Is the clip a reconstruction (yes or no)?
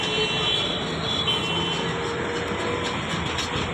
no